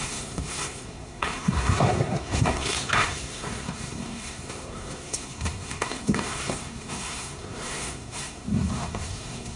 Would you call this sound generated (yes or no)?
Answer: yes